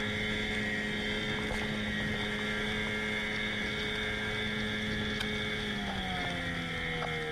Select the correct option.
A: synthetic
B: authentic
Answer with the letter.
B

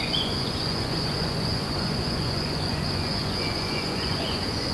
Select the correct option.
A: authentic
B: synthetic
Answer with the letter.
B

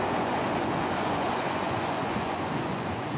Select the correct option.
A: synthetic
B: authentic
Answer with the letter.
A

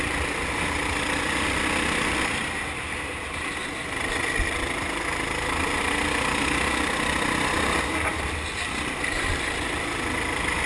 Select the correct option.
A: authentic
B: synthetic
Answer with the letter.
A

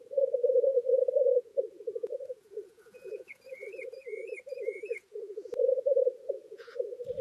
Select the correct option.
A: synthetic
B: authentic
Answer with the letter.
A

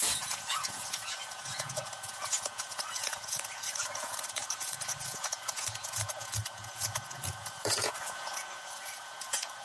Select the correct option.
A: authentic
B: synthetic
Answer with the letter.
B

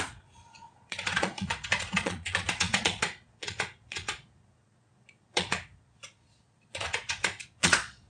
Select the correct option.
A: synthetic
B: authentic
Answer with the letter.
A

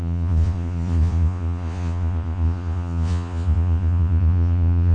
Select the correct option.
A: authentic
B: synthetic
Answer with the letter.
B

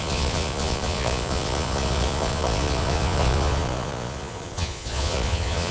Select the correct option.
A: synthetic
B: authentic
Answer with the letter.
A